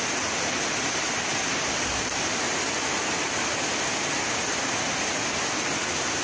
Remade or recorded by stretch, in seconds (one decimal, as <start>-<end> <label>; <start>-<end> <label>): 0.0-6.2 recorded